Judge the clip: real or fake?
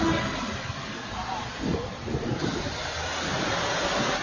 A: real